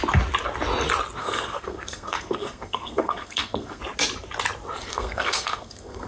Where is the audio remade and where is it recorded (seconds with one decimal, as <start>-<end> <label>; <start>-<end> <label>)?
0.0-1.2 recorded; 1.2-3.8 remade; 3.8-4.9 recorded; 4.9-6.1 remade